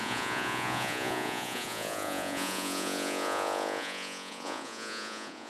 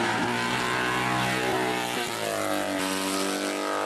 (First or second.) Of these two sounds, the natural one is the second